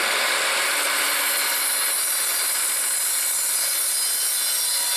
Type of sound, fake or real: real